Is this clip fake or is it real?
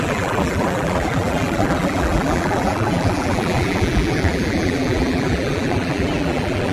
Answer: fake